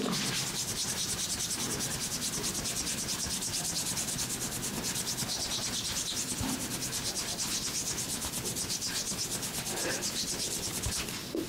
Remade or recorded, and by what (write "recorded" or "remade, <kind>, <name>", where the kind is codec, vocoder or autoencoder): recorded